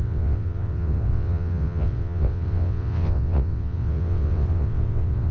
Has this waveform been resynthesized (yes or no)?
yes